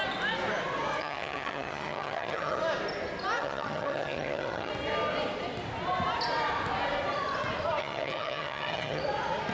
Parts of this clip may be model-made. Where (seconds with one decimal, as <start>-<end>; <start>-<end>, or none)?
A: 1.0-2.6; 3.4-4.7; 7.8-9.0